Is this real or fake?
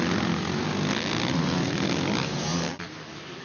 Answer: real